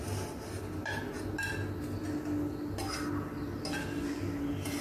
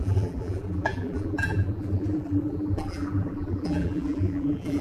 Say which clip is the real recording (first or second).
first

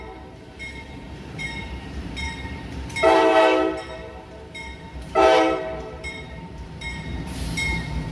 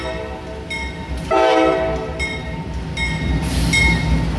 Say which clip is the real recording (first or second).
second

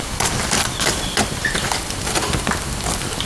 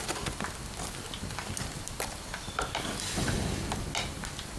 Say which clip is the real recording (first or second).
second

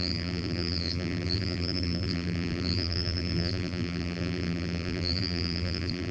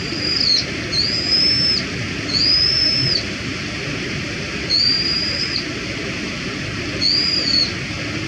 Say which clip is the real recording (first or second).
second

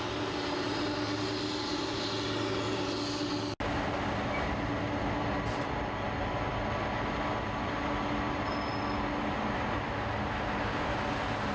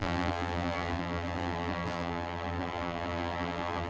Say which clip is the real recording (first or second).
first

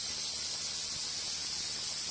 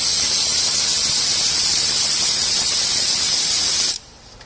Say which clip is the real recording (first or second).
first